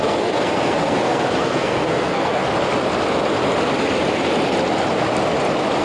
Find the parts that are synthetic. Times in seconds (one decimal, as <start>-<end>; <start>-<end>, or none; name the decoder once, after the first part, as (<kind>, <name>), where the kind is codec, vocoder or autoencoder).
0.0-2.4 (codec, SNAC)

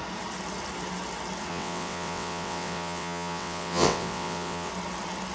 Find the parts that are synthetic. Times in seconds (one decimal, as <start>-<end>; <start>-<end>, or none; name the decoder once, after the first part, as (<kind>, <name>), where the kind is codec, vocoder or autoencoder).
1.5-4.7 (vocoder, WaveNeXt)